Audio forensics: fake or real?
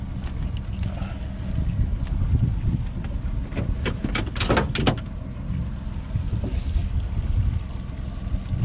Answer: real